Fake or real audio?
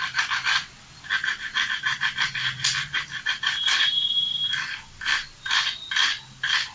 real